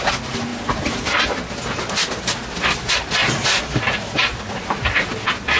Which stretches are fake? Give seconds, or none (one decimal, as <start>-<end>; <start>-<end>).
none